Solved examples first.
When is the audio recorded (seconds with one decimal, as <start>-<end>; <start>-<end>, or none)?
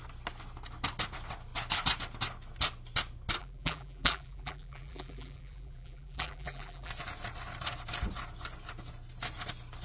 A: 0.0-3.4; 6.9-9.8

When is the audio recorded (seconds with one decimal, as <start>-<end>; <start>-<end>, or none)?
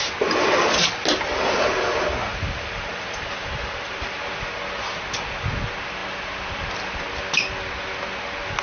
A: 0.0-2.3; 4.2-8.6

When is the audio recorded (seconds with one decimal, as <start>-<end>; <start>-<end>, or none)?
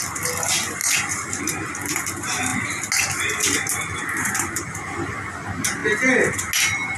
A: 0.0-0.8; 1.4-7.0